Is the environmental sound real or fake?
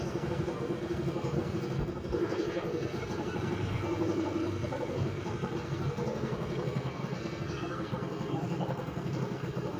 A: fake